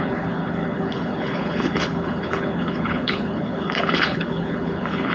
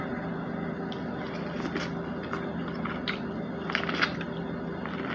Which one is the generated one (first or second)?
first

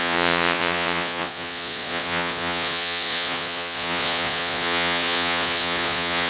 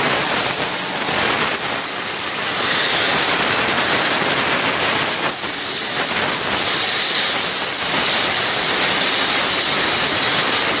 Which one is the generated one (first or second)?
first